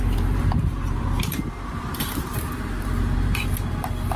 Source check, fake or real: fake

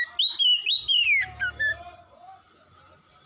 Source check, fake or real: real